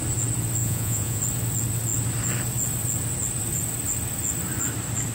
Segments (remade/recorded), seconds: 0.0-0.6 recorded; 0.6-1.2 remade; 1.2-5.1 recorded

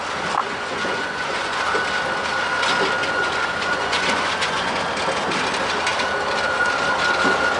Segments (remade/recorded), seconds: 0.0-0.4 recorded; 0.4-1.6 remade; 1.6-3.0 recorded; 3.0-4.8 remade; 4.8-7.6 recorded

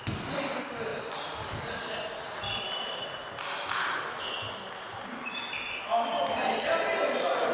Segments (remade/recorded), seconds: 0.0-7.5 recorded

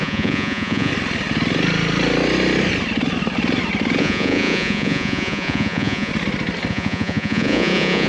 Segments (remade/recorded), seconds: 0.0-0.9 remade; 0.9-4.0 recorded; 4.0-6.1 remade; 6.1-6.7 recorded; 6.7-8.1 remade

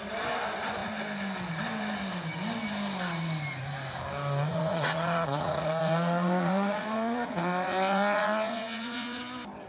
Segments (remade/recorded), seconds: 0.0-4.5 recorded; 4.5-9.2 remade; 9.2-9.7 recorded

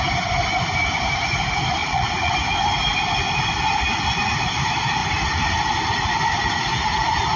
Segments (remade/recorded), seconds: 0.0-1.8 recorded; 1.8-2.3 remade; 2.3-7.4 recorded